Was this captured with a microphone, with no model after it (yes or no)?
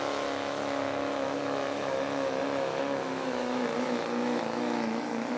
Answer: no